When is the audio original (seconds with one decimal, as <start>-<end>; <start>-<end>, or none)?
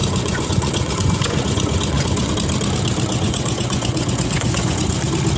2.3-3.1; 5.0-5.4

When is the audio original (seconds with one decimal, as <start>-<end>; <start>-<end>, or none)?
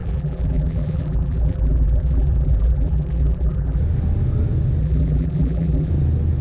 3.8-4.8; 5.9-6.4